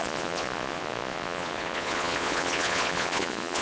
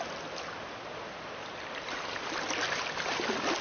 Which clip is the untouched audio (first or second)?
second